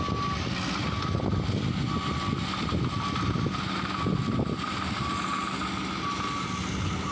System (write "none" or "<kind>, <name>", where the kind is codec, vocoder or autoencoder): none